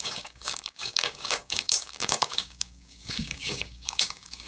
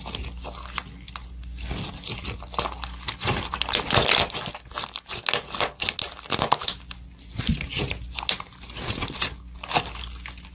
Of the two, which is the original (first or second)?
second